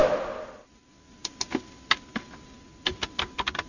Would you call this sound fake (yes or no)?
no